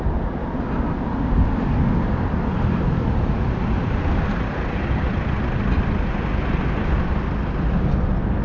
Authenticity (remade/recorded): recorded